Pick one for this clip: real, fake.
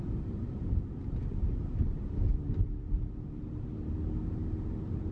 real